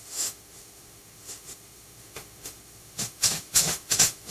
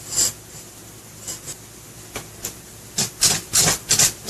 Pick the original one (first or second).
second